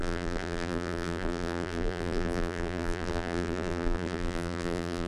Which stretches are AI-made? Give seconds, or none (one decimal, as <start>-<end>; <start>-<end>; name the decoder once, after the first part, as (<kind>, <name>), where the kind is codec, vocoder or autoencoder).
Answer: 0.0-5.1 (vocoder, BigVGAN v2)